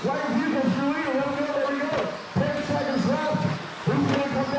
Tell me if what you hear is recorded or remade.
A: recorded